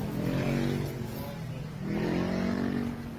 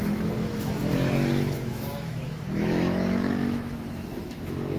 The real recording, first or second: first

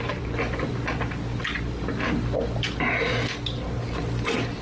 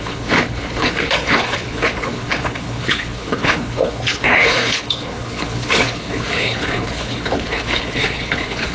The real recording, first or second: first